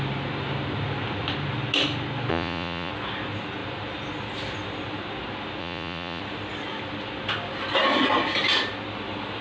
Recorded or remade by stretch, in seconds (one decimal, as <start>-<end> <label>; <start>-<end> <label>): 0.0-2.3 recorded; 2.3-2.9 remade; 2.9-5.6 recorded; 5.6-6.2 remade; 6.2-9.4 recorded